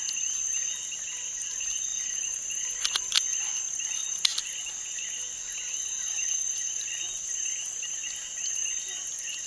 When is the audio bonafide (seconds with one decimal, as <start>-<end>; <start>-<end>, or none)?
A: 0.0-9.5